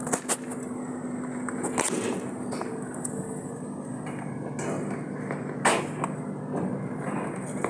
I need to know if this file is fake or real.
real